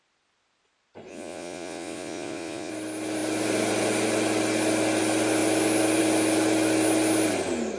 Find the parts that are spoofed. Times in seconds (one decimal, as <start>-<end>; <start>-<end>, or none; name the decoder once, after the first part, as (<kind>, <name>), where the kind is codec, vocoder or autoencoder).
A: 1.1-2.7 (vocoder, Vocos)